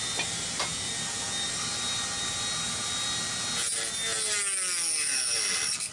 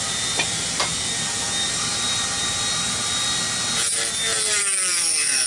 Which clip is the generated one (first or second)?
second